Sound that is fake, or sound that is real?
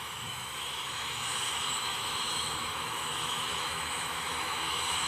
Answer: fake